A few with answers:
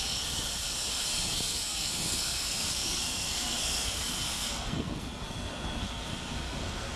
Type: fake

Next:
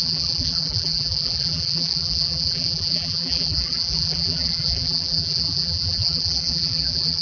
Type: fake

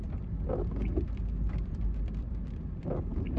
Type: fake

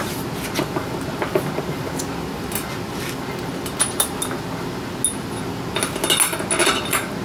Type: real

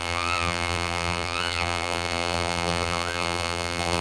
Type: fake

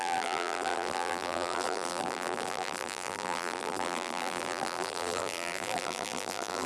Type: fake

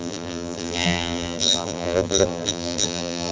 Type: fake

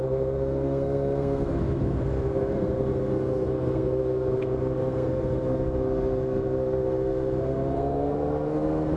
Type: fake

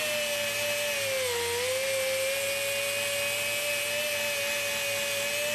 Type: real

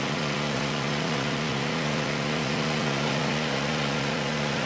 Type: fake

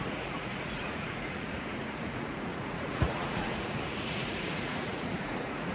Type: fake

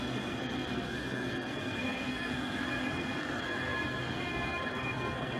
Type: fake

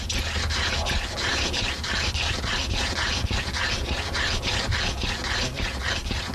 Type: real